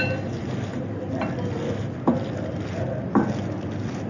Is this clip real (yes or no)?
yes